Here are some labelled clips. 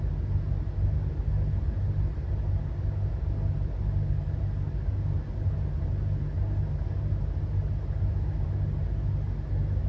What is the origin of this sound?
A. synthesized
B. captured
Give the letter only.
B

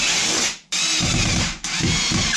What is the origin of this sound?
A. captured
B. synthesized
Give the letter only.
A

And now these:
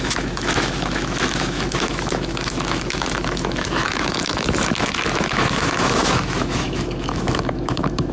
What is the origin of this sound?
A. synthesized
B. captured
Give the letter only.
A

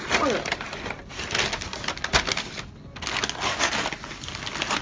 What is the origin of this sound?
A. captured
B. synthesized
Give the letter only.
A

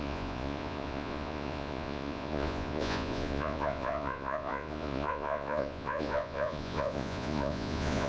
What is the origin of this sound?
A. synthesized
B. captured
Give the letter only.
A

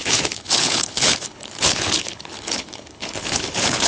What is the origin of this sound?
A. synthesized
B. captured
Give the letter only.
A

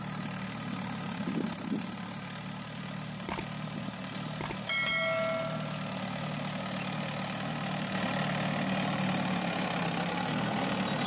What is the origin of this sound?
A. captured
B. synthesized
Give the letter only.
A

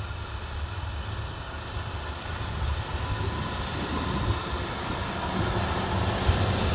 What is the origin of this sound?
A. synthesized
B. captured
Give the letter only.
B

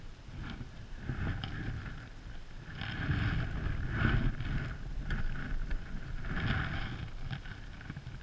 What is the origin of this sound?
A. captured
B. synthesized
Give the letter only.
A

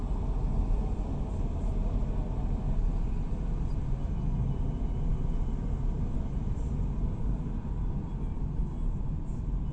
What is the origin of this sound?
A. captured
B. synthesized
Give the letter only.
A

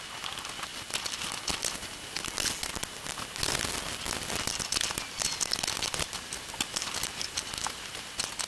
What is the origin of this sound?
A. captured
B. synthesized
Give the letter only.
A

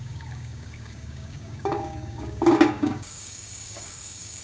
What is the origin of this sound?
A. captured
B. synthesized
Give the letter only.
B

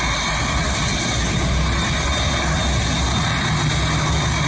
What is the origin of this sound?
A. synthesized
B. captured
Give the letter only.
B